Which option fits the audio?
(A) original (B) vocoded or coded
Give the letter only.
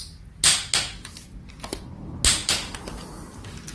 A